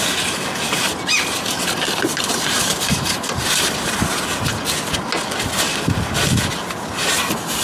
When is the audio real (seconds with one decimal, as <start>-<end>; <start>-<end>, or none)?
0.0-2.3; 3.9-7.6